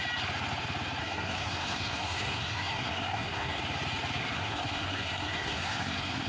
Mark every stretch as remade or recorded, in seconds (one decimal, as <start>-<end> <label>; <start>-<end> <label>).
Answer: 0.0-1.0 recorded; 1.0-3.6 remade; 3.6-4.2 recorded; 4.2-6.3 remade